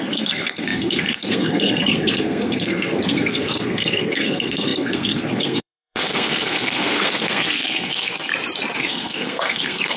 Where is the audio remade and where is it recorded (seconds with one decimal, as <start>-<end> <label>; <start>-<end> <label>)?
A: 0.0-8.3 remade; 8.3-8.8 recorded; 8.8-10.0 remade